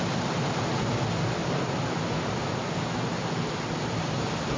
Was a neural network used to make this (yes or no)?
no